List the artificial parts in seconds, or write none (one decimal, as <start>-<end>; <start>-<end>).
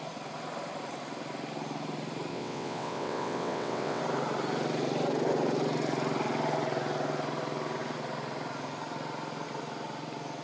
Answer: 2.3-4.0